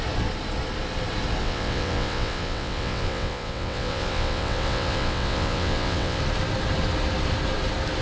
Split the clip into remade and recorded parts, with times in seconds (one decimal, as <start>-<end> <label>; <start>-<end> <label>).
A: 0.0-1.4 recorded; 1.4-6.2 remade; 6.2-8.0 recorded